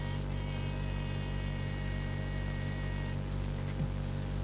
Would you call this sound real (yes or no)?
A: yes